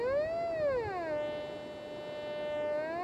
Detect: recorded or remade recorded